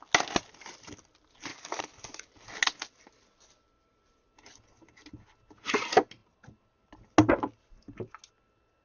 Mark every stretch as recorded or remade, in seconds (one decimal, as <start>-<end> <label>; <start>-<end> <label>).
0.0-1.5 recorded; 1.5-2.3 remade; 2.3-8.8 recorded